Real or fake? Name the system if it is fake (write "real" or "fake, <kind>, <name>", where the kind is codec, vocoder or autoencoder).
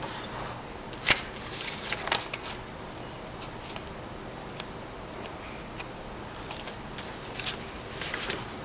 real